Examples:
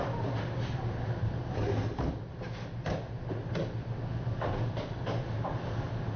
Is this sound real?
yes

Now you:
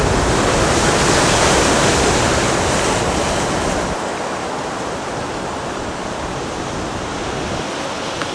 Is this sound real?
yes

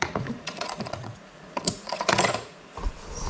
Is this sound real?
no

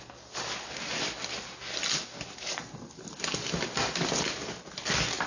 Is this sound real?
yes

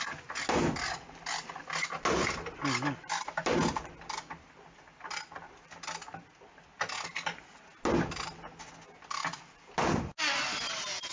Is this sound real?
yes